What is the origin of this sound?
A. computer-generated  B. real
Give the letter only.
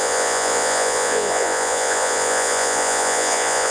A